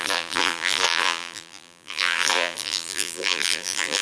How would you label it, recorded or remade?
remade